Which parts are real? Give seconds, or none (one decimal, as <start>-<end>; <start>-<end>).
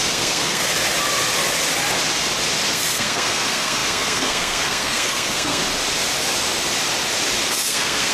0.7-2.7; 5.6-7.5